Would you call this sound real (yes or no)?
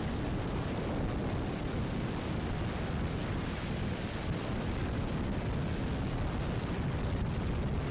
yes